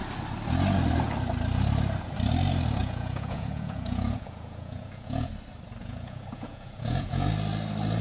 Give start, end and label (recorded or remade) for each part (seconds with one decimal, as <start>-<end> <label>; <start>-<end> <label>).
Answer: 0.0-2.8 recorded; 2.8-5.3 remade; 5.3-5.8 recorded; 5.8-7.3 remade; 7.3-8.0 recorded